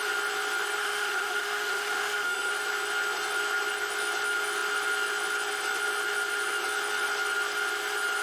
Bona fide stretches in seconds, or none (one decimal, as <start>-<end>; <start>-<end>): 0.0-0.8; 2.5-8.2